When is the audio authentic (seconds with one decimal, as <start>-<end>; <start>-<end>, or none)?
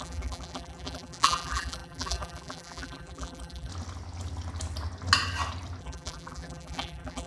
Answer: 3.7-5.8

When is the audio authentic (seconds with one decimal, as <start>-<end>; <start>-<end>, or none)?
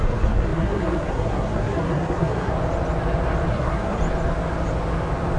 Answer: 2.5-3.5; 4.0-5.4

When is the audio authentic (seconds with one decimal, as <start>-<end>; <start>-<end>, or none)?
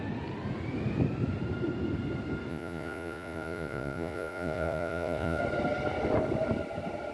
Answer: 0.0-2.5; 5.4-7.1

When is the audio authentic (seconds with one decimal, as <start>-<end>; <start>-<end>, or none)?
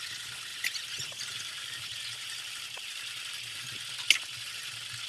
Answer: 0.0-0.5; 3.6-5.1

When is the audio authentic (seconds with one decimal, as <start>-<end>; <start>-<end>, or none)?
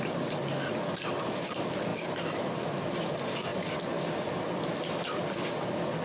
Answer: 0.0-6.0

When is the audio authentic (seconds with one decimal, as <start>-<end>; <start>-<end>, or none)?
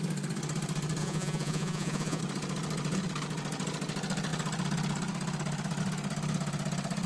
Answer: 0.0-1.0; 2.2-7.1